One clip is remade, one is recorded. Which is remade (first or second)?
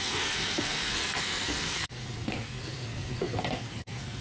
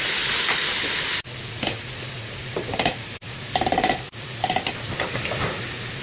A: first